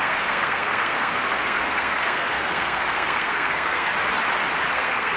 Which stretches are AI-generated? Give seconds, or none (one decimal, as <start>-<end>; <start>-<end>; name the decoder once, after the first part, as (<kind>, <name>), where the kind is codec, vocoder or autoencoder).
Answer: 0.0-3.9 (codec, SNAC); 4.7-5.2